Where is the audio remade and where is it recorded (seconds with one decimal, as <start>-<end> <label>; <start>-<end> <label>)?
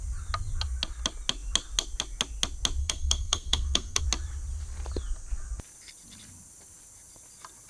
0.0-2.8 recorded; 2.8-4.0 remade; 4.0-7.7 recorded